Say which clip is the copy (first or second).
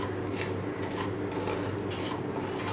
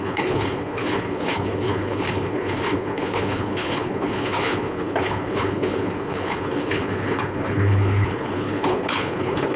second